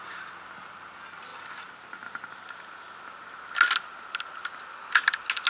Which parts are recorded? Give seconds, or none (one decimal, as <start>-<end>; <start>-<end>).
0.0-5.5